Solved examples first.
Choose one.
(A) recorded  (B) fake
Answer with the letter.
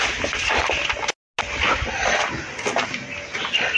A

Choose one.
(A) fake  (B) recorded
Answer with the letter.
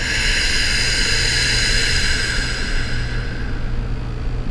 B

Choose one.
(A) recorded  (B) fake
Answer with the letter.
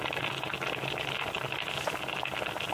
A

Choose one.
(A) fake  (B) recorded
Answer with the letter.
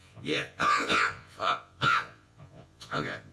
A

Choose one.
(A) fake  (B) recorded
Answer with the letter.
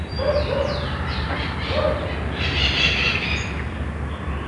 B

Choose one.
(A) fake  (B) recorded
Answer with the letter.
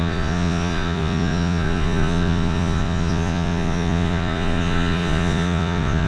A